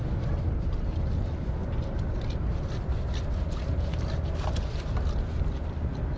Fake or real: real